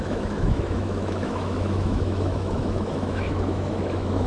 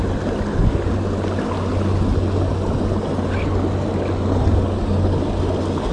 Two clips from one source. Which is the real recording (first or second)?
second